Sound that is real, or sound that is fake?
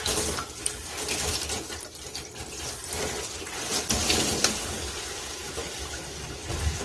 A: real